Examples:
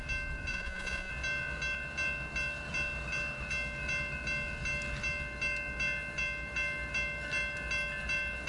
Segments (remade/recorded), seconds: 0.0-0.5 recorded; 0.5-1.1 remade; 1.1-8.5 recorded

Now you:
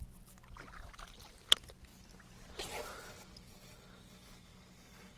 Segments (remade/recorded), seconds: 0.0-5.2 recorded

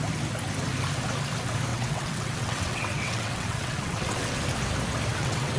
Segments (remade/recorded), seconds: 0.0-1.7 recorded; 1.7-4.4 remade; 4.4-5.1 recorded; 5.1-5.6 remade

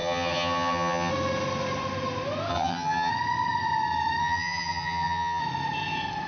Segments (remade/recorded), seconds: 0.0-1.1 remade; 1.1-2.5 recorded; 2.5-3.1 remade; 3.1-4.2 recorded; 4.2-5.4 remade; 5.4-6.3 recorded

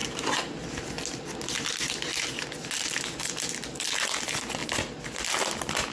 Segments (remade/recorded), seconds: 0.0-5.9 recorded

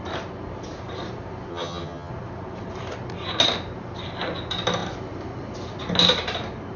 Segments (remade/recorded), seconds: 0.0-1.5 recorded; 1.5-2.1 remade; 2.1-6.8 recorded